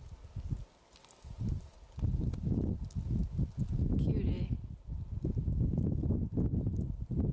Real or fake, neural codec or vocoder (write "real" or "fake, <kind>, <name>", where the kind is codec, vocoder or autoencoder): real